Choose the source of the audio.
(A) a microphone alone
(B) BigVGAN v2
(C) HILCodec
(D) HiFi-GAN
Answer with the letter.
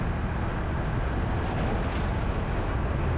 A